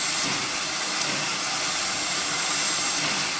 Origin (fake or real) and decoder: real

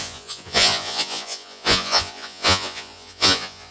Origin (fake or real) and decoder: fake, vocoder, Vocos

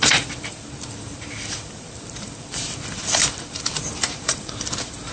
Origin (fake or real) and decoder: fake, vocoder, BigVGAN v2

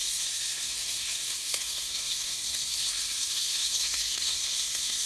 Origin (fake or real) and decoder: fake, codec, SNAC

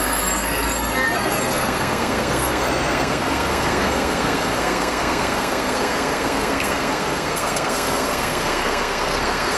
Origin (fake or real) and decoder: fake, codec, SNAC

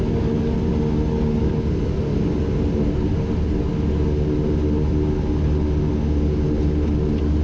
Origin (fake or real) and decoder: real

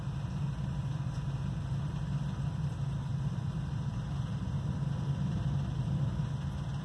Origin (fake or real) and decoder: real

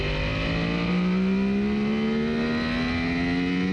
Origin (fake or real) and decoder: real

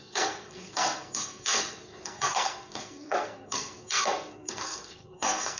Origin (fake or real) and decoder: fake, codec, SNAC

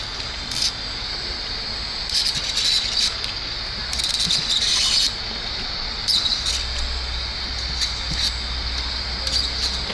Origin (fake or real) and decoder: real